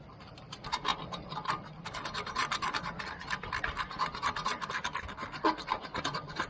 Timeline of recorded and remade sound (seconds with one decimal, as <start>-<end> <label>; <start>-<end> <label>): 0.0-0.9 remade; 0.9-1.7 recorded; 1.7-2.4 remade; 2.4-5.6 recorded; 5.6-6.5 remade